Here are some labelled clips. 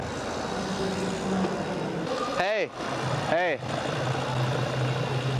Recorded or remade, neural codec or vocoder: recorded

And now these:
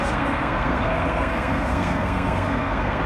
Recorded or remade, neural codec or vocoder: remade, codec, SNAC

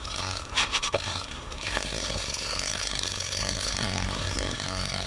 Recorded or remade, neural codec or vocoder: remade, codec, SNAC